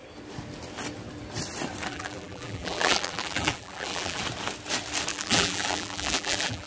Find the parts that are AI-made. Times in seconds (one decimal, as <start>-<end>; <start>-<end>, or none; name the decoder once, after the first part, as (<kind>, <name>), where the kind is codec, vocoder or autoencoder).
1.9-4.2 (vocoder, BigVGAN v2); 5.1-6.7